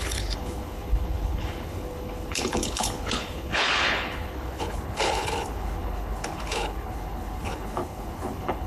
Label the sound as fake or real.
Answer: fake